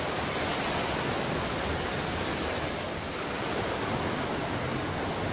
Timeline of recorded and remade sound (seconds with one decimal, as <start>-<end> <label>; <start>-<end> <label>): 0.0-2.4 recorded; 2.4-4.6 remade; 4.6-5.3 recorded